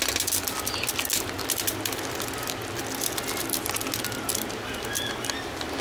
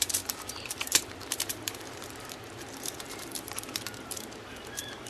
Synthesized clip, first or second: second